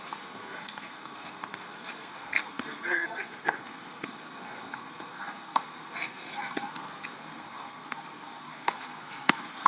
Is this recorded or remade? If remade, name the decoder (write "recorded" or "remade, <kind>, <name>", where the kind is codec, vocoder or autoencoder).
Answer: remade, codec, SNAC